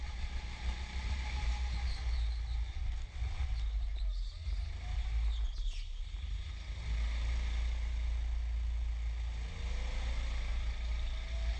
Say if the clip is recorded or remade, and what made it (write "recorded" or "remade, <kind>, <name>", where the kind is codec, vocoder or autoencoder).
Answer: recorded